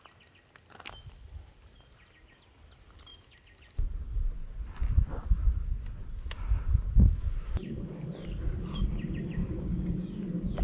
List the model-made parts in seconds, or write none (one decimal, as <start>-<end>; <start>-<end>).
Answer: 9.4-10.2